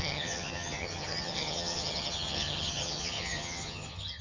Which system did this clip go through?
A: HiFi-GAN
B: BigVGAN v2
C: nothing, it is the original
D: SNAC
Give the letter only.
A